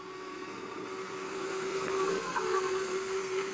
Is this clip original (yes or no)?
no